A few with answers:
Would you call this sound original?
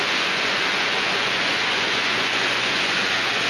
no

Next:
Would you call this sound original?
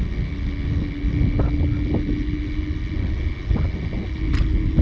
yes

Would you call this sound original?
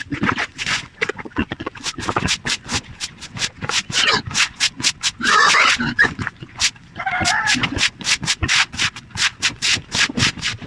no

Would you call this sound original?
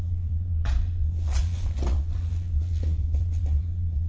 no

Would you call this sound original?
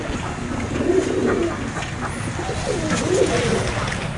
yes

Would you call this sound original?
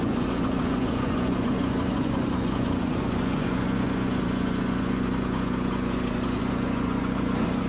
no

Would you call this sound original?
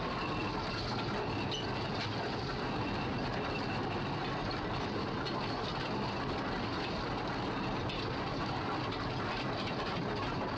yes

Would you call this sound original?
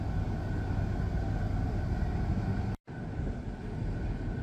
yes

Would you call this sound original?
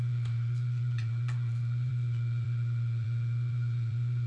no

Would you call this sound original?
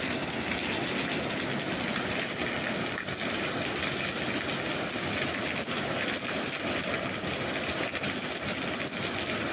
yes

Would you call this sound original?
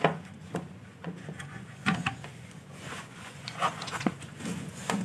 no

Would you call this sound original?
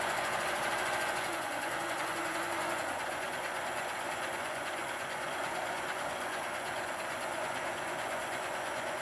no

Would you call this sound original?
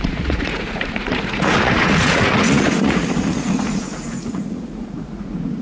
no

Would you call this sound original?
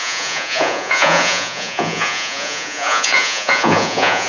no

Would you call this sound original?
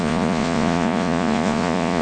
no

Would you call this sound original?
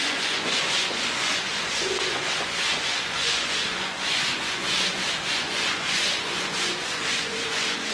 no